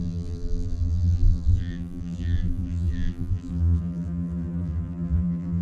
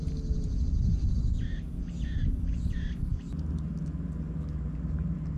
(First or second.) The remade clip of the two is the first